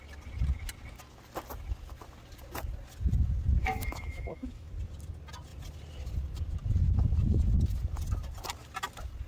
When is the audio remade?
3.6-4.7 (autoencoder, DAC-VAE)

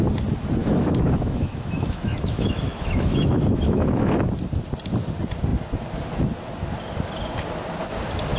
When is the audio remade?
0.6-4.3 (autoencoder, DAC-VAE)

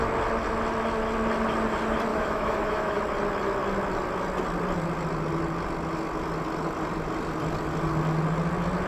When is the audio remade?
2.1-3.0 (autoencoder, DAC-VAE)

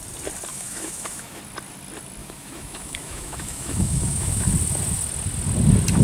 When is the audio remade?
0.5-1.4 (autoencoder, DAC-VAE); 2.2-4.5

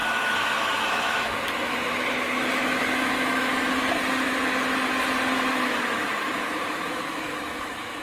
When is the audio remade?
0.0-3.5 (autoencoder, DAC-VAE); 5.5-8.0

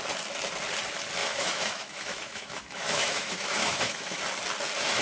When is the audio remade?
1.2-4.2 (autoencoder, DAC-VAE)